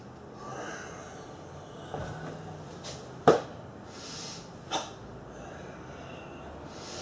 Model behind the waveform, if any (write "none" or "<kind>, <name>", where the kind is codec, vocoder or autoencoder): none